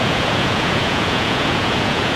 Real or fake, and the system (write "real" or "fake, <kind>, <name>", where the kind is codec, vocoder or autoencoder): fake, vocoder, Vocos